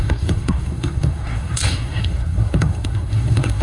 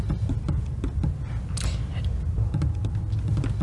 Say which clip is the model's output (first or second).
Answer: first